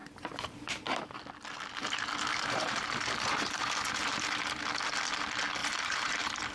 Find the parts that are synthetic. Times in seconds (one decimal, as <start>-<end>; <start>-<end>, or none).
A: 0.0-1.0; 2.3-4.6; 5.6-6.5